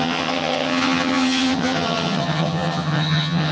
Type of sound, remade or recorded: remade